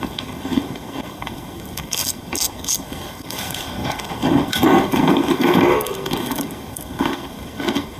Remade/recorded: remade